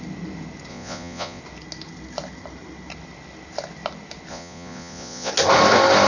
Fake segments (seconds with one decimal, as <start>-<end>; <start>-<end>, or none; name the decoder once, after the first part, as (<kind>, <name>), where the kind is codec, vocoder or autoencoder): 0.7-1.4 (vocoder, Vocos); 4.3-5.3